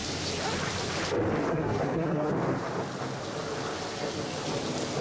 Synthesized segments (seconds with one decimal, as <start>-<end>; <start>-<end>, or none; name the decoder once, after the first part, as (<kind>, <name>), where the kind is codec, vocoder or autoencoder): 1.5-2.3 (codec, SNAC)